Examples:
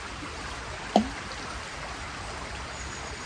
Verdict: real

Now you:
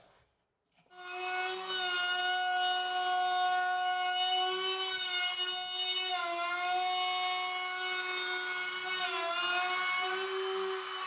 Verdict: real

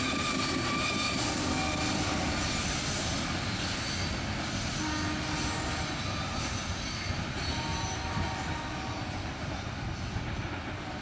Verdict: real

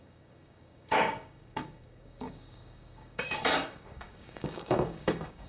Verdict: fake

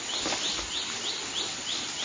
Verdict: real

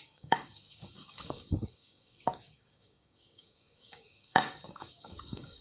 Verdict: fake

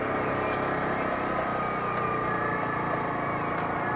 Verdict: real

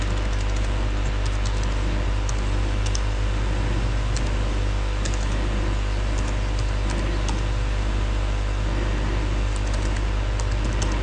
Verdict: real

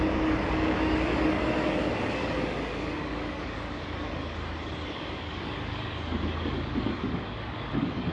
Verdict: fake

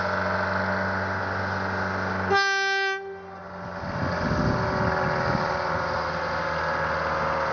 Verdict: real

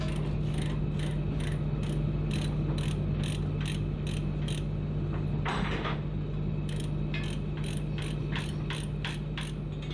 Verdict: real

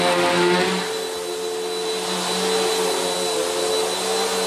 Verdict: real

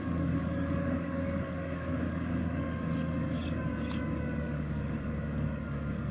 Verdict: fake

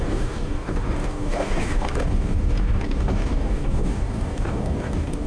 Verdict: fake